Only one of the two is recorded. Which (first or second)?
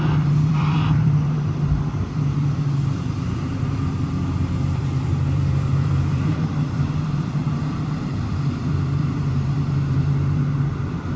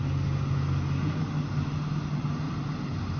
second